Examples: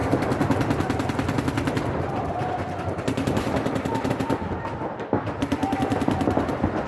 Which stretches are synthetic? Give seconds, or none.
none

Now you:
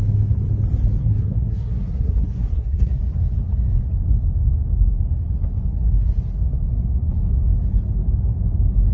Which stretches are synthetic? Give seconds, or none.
1.0-3.0 (codec, SNAC)

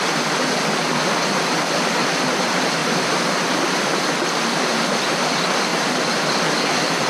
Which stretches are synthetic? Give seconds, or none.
0.0-2.8 (vocoder, BigVGAN v2); 3.5-7.1

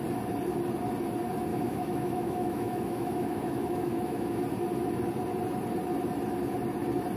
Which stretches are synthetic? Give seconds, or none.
1.5-4.4 (autoencoder, DAC-VAE)

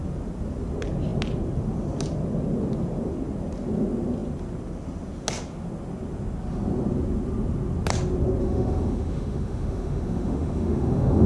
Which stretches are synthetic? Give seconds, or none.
8.4-11.3 (autoencoder, DAC-VAE)

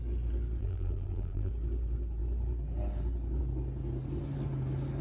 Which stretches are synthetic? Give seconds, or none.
0.6-1.5 (vocoder, BigVGAN v2)

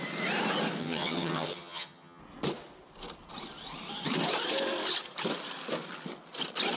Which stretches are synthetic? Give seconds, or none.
0.8-2.2 (vocoder, HiFi-GAN)